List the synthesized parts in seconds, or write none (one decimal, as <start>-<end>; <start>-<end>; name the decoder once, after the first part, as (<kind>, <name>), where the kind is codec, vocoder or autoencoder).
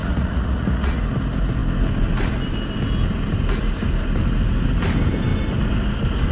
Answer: 0.0-1.0 (vocoder, Vocos)